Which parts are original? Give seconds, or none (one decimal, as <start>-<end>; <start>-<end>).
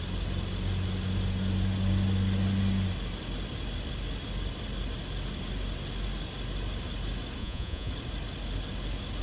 0.0-7.4; 7.9-9.2